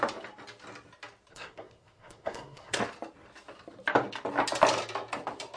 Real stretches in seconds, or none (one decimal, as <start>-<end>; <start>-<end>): 0.0-1.3; 2.8-5.6